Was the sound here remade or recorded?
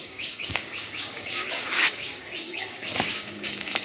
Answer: remade